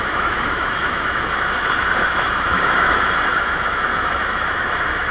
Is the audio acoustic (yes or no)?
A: no